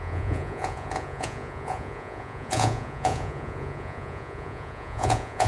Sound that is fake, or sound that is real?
fake